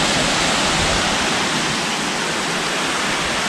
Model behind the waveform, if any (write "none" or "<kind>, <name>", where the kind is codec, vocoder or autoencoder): none